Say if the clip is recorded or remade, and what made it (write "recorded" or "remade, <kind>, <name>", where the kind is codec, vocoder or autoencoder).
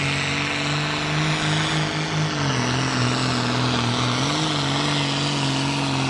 recorded